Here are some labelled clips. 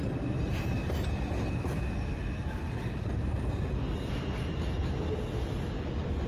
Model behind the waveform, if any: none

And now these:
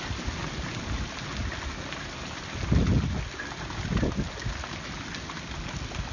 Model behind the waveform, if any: none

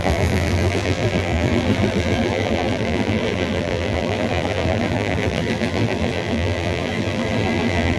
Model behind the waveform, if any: vocoder, BigVGAN v2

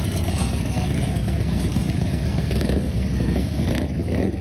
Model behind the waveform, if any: codec, SNAC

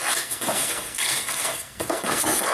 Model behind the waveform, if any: codec, SNAC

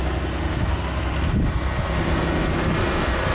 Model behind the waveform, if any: none